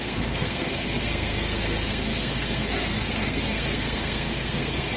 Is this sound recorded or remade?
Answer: remade